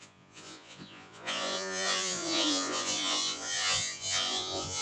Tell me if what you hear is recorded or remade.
remade